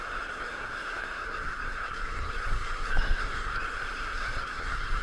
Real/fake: fake